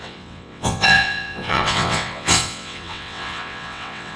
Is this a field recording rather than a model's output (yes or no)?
no